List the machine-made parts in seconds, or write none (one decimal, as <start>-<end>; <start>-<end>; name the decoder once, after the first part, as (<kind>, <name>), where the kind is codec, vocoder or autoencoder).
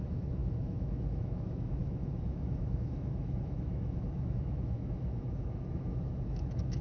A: 0.0-6.8 (autoencoder, DAC-VAE)